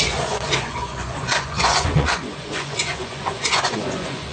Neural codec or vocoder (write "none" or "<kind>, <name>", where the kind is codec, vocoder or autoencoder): vocoder, Vocos